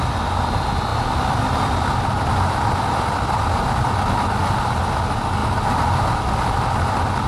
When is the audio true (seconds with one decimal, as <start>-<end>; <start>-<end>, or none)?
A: 0.0-0.9; 2.1-7.3